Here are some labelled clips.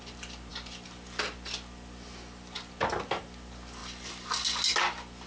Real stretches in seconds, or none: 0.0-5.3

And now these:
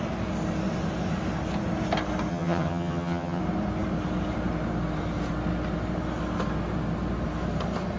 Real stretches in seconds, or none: 0.0-2.3; 3.4-8.0

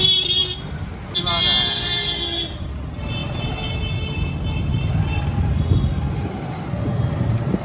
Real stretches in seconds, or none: 0.0-7.6

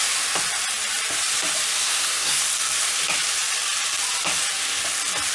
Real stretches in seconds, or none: 0.0-1.8; 2.4-5.3

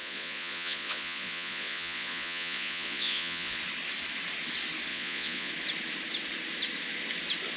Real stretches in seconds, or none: 3.6-4.9; 5.5-7.6

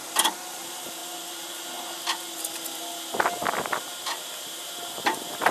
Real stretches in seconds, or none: 1.0-4.3

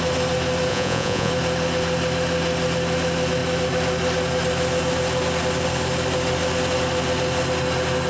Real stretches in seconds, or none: 0.0-0.7; 1.3-8.1